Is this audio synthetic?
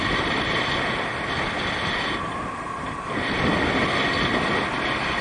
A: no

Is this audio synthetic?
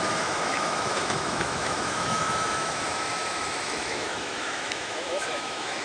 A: yes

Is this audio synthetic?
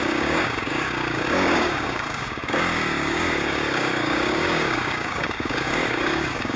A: yes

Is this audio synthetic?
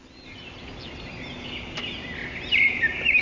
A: no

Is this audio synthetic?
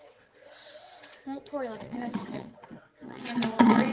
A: yes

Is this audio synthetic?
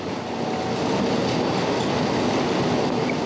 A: no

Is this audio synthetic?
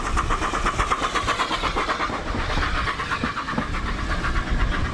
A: no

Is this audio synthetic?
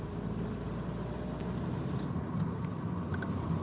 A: no